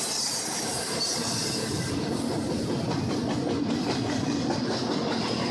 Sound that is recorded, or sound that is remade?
recorded